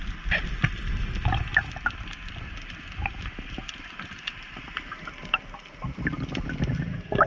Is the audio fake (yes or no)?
no